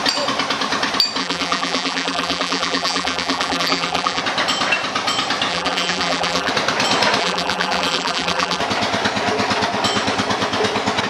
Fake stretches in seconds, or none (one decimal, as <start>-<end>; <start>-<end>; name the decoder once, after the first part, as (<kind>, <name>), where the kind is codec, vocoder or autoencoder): 1.2-4.2 (vocoder, BigVGAN v2); 5.5-6.5; 7.2-8.6